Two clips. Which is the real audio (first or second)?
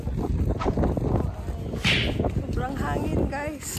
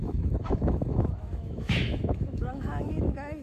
first